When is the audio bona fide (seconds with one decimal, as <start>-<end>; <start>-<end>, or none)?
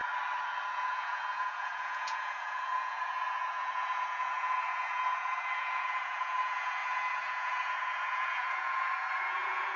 0.0-0.7